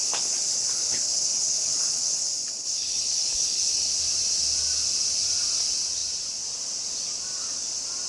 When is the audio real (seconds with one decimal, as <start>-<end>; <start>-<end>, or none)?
4.0-8.1